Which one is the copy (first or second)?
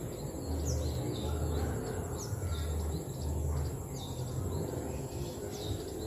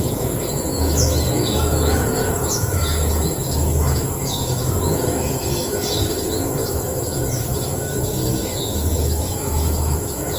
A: second